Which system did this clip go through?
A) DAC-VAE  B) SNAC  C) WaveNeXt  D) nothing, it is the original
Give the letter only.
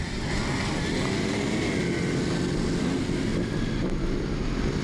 D